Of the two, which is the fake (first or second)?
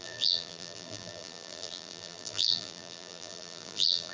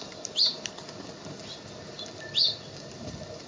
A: first